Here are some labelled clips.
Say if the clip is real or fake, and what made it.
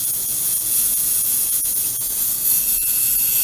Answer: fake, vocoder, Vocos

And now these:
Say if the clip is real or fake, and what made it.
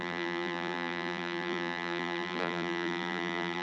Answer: fake, vocoder, BigVGAN v2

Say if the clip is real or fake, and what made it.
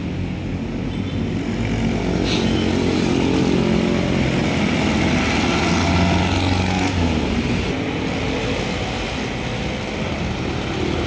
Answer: real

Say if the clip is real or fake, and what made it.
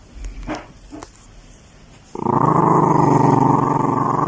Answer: real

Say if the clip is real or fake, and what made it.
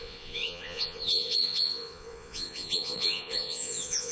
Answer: fake, vocoder, Vocos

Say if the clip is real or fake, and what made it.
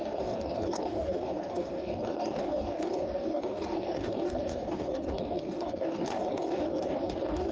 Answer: fake, codec, DAC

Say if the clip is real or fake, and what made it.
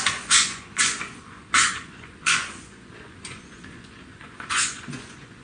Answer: fake, vocoder, Vocos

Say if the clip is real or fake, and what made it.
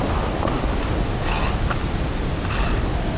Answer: real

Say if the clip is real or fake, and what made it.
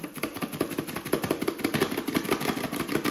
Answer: real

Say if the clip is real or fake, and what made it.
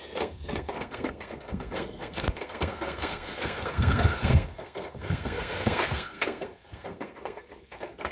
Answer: fake, codec, SNAC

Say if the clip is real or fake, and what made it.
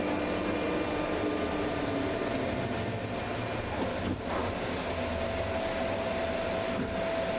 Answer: real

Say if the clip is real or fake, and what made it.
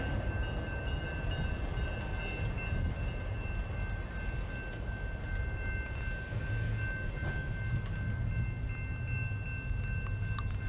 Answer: real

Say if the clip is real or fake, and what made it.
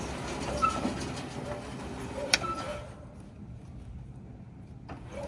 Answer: real